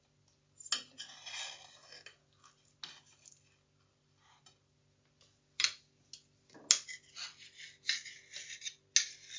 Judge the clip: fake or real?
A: real